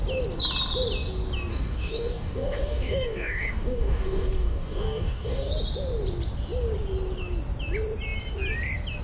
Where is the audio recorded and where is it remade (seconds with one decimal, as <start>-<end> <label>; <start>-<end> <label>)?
0.0-1.5 recorded; 1.5-5.5 remade; 5.5-9.0 recorded